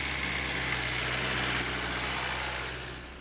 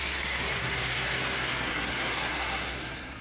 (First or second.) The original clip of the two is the first